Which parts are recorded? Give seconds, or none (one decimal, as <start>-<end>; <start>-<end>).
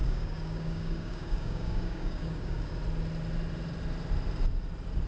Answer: 2.7-5.1